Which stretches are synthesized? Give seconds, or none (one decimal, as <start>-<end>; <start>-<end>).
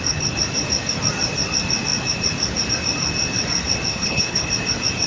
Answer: 3.9-4.5